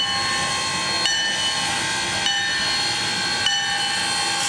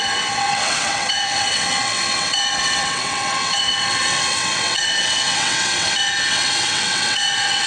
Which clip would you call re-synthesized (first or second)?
second